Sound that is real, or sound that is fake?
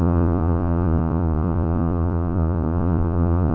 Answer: fake